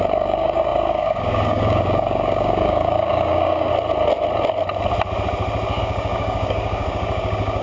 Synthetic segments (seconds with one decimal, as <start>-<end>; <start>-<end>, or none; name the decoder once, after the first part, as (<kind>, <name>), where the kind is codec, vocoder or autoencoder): 0.0-3.7 (codec, DAC); 5.8-7.6